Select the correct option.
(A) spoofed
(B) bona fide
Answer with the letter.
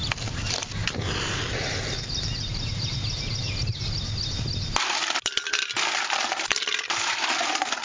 B